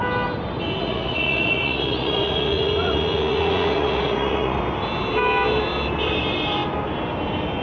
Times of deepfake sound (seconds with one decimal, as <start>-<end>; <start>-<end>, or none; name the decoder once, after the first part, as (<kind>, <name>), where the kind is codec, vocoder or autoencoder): 0.8-4.6 (vocoder, Vocos)